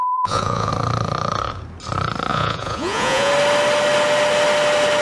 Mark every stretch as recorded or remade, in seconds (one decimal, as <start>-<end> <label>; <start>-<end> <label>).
0.0-0.7 remade; 0.7-2.3 recorded; 2.3-3.3 remade; 3.3-5.0 recorded